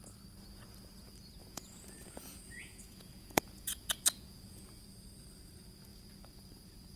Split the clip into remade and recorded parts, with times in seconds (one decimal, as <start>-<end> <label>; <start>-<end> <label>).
0.0-1.4 recorded; 1.4-4.8 remade; 4.8-7.0 recorded